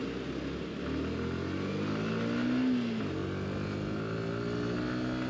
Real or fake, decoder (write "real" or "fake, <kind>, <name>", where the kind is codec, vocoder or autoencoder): real